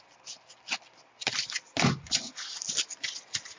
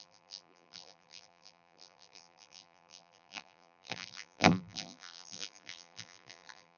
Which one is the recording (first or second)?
first